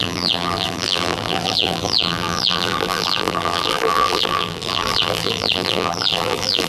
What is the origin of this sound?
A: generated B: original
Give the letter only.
A